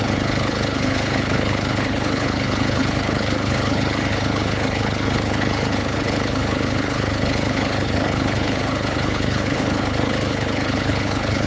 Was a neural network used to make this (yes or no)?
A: yes